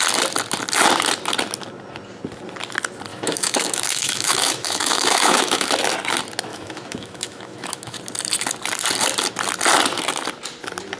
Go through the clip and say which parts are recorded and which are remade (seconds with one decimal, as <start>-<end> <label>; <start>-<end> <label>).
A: 0.0-3.1 recorded; 3.1-5.7 remade; 5.7-6.5 recorded; 6.5-8.0 remade; 8.0-11.0 recorded